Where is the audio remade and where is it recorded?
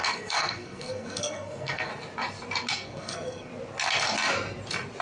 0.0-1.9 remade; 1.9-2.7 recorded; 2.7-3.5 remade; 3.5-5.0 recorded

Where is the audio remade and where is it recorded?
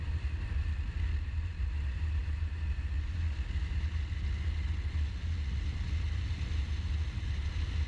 0.0-7.9 recorded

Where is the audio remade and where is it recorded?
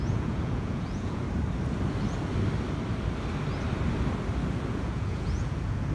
0.0-1.2 remade; 1.2-4.7 recorded; 4.7-5.9 remade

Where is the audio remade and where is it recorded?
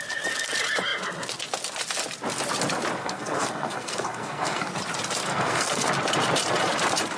0.0-3.0 recorded; 3.0-4.7 remade; 4.7-5.3 recorded; 5.3-5.9 remade; 5.9-7.2 recorded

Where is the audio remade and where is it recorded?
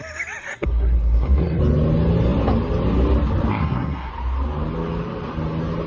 0.0-0.4 recorded; 0.4-1.6 remade; 1.6-3.5 recorded; 3.5-4.1 remade; 4.1-5.9 recorded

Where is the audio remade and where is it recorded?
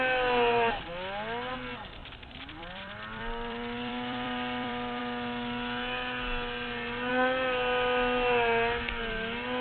0.0-2.0 recorded; 2.0-5.0 remade; 5.0-9.6 recorded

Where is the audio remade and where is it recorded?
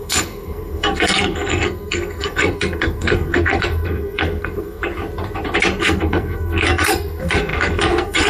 0.0-4.8 remade; 4.8-5.8 recorded; 5.8-8.3 remade